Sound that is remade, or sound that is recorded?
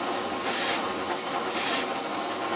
recorded